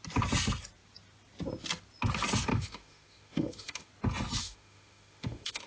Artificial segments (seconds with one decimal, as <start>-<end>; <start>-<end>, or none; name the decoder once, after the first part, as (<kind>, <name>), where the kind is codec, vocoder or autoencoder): 2.5-3.9 (autoencoder, DAC-VAE); 4.4-5.7